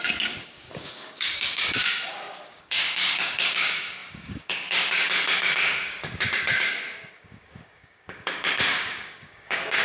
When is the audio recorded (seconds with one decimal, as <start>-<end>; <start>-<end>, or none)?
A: none